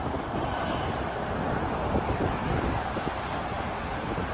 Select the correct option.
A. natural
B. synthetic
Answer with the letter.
A